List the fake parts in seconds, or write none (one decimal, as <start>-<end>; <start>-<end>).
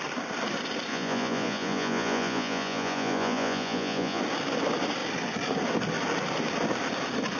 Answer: 0.9-4.2